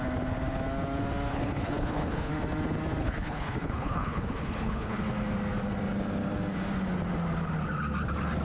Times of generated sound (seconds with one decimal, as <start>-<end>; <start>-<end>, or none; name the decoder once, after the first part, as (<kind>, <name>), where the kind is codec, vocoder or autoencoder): 1.3-2.3 (codec, HILCodec); 3.0-5.0